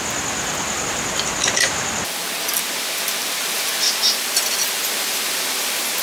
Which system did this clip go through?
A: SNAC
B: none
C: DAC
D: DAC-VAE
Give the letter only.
B